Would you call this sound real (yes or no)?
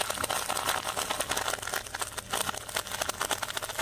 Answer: yes